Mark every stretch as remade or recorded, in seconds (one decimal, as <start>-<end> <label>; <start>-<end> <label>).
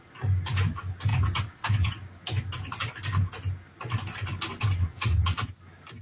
0.0-1.1 recorded; 1.1-1.9 remade; 1.9-4.8 recorded; 4.8-5.5 remade; 5.5-6.0 recorded